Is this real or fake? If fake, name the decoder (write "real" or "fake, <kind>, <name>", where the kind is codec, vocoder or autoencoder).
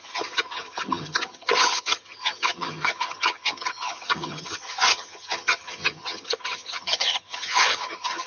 fake, vocoder, HiFi-GAN